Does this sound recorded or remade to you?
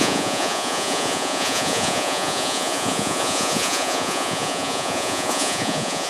remade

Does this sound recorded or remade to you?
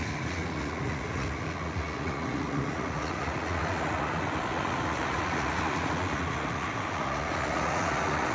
remade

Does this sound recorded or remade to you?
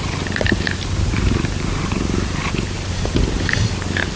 remade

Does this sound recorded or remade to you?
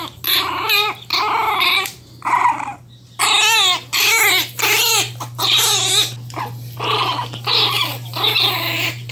recorded